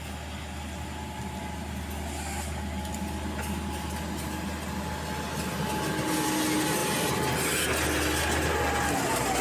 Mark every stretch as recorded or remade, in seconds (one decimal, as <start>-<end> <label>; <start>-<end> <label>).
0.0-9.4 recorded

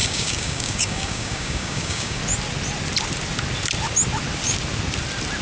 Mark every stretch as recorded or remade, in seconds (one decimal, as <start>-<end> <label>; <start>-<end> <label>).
0.0-2.2 remade; 2.2-5.4 recorded

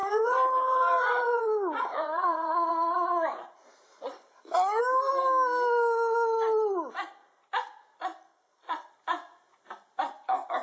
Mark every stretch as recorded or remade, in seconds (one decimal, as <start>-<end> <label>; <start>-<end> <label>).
0.0-2.7 remade; 2.7-3.9 recorded; 3.9-4.8 remade; 4.8-8.3 recorded; 8.3-8.9 remade; 8.9-10.6 recorded